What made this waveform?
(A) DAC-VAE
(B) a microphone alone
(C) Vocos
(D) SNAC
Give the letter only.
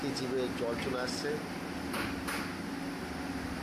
B